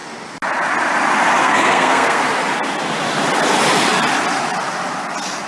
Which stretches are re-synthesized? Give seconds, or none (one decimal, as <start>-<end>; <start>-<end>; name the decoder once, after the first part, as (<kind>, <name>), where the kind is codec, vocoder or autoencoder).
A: 1.4-2.2 (codec, SNAC)